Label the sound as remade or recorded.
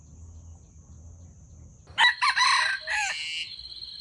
recorded